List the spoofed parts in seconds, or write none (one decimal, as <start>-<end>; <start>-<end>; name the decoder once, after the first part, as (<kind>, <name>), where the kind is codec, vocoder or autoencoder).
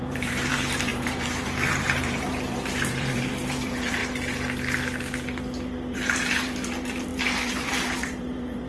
0.0-4.0 (vocoder, BigVGAN v2); 5.9-8.7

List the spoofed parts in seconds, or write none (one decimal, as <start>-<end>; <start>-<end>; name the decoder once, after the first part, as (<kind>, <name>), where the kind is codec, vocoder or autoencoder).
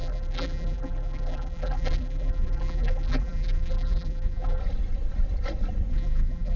0.0-4.6 (vocoder, BigVGAN v2); 5.9-6.6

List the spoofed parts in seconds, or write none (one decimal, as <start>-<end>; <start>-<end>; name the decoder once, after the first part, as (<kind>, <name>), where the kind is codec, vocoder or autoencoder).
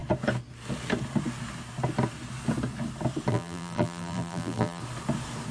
3.3-4.8 (vocoder, BigVGAN v2)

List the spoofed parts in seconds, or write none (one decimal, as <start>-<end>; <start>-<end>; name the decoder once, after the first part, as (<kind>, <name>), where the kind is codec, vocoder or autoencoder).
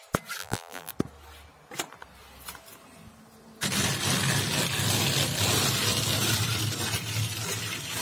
0.4-0.9 (vocoder, BigVGAN v2)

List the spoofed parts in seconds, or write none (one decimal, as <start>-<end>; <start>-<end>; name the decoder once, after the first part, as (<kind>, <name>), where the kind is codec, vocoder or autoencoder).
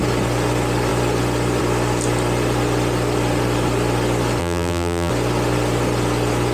4.4-5.1 (vocoder, BigVGAN v2)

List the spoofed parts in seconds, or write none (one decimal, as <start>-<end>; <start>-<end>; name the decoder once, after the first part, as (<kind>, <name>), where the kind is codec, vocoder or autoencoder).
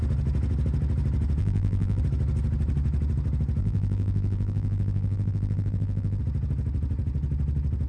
1.4-2.0 (vocoder, BigVGAN v2); 3.6-6.2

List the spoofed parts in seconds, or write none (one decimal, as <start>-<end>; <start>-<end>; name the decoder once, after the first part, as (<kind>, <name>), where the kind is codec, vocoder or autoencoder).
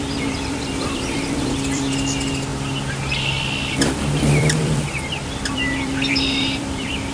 0.0-2.5 (vocoder, BigVGAN v2); 3.8-7.1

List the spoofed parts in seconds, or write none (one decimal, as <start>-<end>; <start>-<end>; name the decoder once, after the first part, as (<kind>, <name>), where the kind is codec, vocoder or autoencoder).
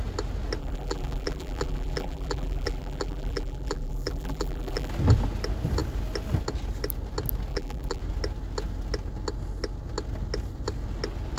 0.6-4.9 (vocoder, BigVGAN v2); 7.5-8.0